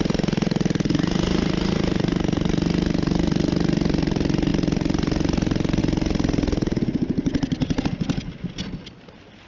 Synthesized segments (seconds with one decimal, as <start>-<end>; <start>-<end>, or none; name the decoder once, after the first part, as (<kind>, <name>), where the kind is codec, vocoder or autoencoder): none